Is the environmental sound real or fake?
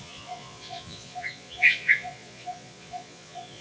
fake